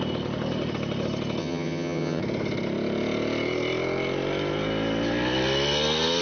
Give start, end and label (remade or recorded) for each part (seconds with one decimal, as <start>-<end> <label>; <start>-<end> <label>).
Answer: 0.0-1.4 recorded; 1.4-2.2 remade; 2.2-6.2 recorded